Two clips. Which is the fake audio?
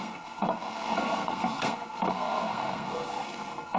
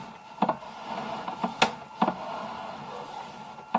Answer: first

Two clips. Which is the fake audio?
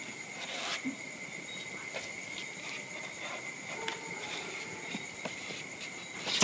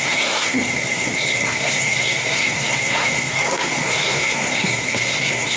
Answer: second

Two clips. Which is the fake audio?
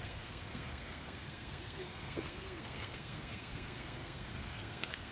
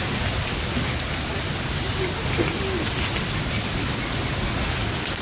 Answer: first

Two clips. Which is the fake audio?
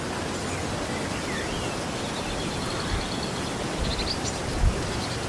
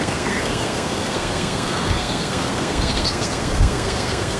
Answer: second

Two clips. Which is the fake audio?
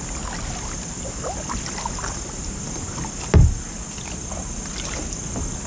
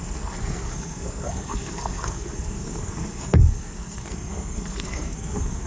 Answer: second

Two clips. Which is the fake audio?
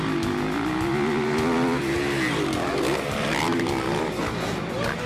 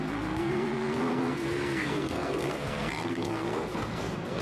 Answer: second